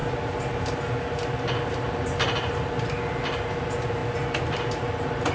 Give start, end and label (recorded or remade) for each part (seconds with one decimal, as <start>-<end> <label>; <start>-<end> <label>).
0.0-5.3 recorded